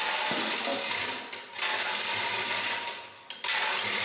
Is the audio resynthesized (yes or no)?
no